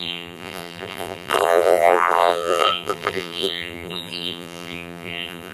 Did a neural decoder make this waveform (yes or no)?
yes